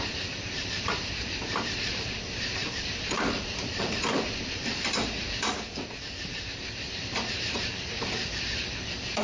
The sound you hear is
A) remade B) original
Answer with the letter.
A